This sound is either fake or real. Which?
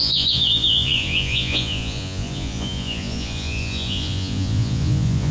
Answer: fake